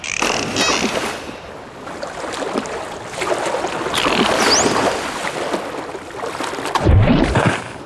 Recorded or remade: recorded